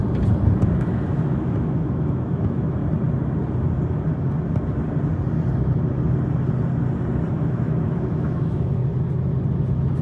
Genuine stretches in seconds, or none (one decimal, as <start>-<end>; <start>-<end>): 0.0-0.6; 2.8-7.3; 8.8-10.0